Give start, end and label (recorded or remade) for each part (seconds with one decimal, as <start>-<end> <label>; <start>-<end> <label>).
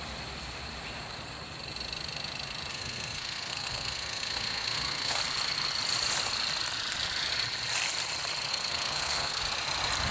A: 0.0-2.7 recorded; 2.7-5.2 remade; 5.2-8.5 recorded; 8.5-9.4 remade; 9.4-10.1 recorded